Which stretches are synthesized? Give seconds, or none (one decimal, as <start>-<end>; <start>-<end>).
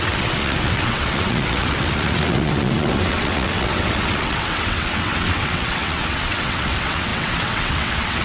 0.0-8.2